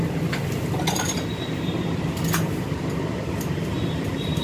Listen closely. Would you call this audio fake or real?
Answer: real